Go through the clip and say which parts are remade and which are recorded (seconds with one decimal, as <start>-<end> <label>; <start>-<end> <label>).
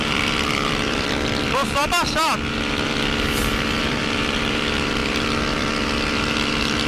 0.0-1.8 remade; 1.8-3.8 recorded; 3.8-6.9 remade